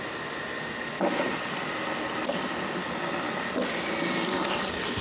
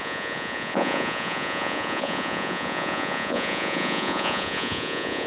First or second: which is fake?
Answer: second